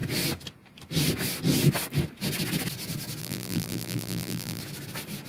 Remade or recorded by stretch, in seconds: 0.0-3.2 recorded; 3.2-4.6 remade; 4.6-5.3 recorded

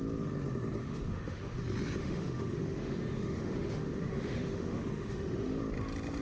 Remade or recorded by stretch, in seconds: 0.0-0.8 recorded; 0.8-1.6 remade; 1.6-2.0 recorded; 2.0-5.6 remade; 5.6-6.2 recorded